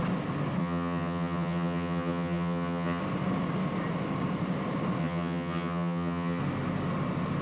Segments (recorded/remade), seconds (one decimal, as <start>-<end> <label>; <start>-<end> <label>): 0.0-0.6 recorded; 0.6-3.0 remade; 3.0-5.0 recorded; 5.0-6.4 remade; 6.4-7.4 recorded